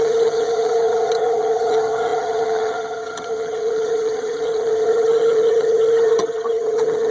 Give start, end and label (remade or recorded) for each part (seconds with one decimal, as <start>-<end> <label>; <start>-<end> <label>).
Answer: 0.0-7.1 remade